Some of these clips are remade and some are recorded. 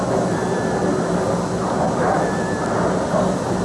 recorded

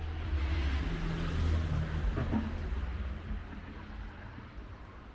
recorded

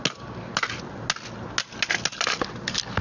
recorded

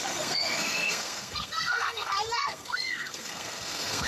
remade